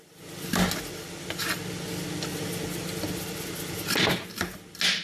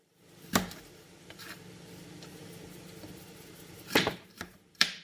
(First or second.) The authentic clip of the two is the first